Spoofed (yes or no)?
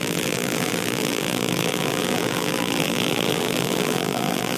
yes